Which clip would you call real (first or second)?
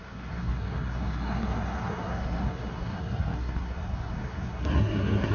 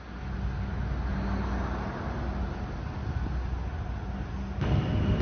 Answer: second